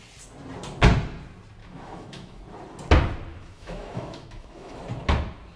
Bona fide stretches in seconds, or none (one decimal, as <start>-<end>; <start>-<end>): 0.0-1.6; 2.4-3.3; 4.8-5.6